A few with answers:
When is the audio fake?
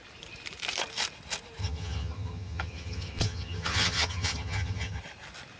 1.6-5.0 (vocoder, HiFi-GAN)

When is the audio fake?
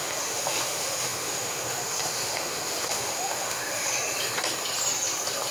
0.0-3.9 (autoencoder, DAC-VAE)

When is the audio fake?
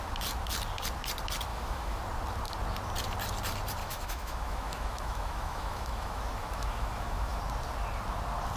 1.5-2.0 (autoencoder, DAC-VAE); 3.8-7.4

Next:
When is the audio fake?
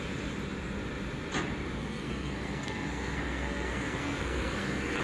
1.8-5.0 (codec, SNAC)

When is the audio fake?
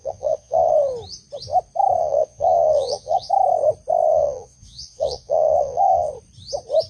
0.0-0.7 (vocoder, Vocos); 2.0-3.3; 4.1-6.1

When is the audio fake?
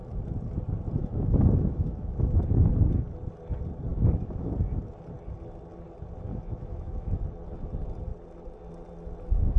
1.0-2.4 (autoencoder, DAC-VAE); 3.9-4.5; 6.3-7.2